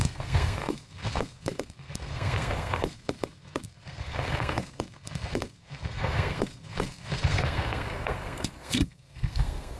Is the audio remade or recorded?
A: remade